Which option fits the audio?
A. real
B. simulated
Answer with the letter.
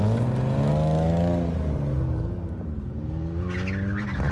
A